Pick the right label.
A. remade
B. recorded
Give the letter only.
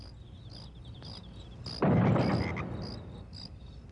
B